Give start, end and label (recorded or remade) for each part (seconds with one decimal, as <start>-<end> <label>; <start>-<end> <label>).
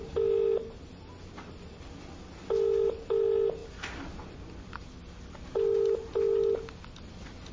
0.0-7.5 recorded